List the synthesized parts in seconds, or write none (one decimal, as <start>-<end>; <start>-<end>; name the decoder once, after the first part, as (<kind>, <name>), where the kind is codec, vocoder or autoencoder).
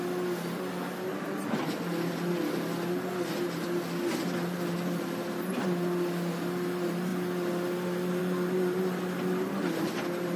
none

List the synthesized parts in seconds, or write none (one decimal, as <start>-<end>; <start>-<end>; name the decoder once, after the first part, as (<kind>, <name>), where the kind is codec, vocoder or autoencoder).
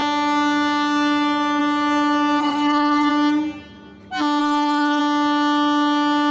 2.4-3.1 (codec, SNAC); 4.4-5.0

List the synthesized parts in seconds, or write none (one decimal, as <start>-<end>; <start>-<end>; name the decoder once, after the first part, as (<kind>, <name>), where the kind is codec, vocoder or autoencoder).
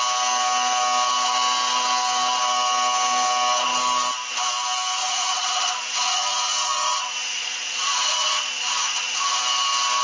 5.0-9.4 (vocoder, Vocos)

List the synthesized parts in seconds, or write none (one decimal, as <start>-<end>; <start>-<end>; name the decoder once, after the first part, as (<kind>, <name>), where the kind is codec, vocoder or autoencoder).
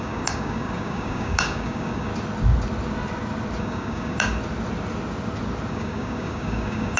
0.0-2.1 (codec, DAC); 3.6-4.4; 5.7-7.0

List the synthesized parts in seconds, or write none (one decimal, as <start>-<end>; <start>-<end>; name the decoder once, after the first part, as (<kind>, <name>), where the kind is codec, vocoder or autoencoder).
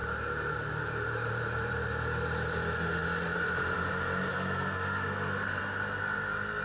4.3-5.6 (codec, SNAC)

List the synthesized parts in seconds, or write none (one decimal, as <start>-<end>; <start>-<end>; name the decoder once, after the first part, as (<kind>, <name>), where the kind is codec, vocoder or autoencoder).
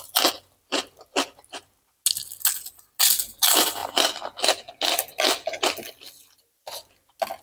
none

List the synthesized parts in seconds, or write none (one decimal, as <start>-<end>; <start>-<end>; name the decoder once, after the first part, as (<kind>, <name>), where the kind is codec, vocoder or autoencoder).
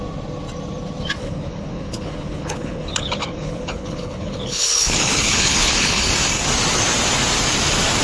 1.2-6.0 (codec, HILCodec)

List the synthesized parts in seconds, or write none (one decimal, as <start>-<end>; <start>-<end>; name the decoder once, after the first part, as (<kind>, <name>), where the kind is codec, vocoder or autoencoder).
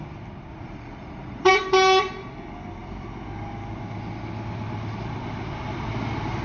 0.5-1.5 (vocoder, Vocos)